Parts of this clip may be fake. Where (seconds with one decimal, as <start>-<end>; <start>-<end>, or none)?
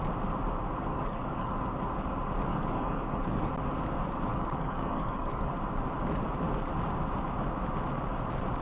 0.9-1.5; 2.5-3.5; 4.3-5.5